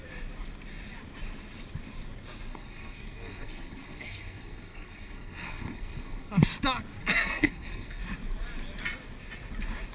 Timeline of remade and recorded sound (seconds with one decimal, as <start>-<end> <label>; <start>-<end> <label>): 0.0-2.5 recorded; 2.5-6.3 remade; 6.3-7.0 recorded; 7.0-8.0 remade; 8.0-9.9 recorded